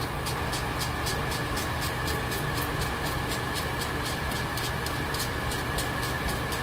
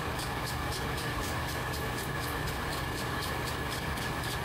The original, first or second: first